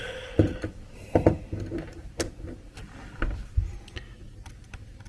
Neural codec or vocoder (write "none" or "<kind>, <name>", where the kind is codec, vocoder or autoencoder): none